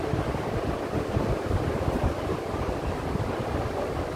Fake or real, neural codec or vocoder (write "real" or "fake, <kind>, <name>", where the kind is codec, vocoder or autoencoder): real